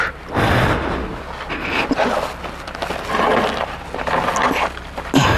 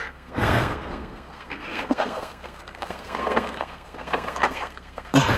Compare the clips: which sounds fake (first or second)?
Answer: second